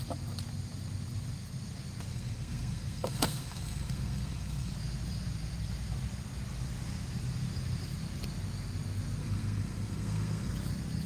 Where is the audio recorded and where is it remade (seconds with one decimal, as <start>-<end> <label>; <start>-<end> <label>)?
0.0-2.1 recorded; 2.1-4.7 remade; 4.7-9.2 recorded; 9.2-10.5 remade; 10.5-11.1 recorded